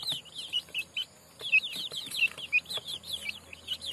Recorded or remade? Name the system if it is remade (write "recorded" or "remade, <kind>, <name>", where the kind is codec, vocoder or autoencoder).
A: recorded